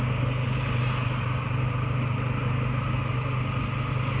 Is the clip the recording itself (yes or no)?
yes